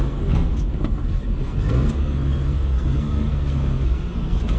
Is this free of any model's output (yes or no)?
no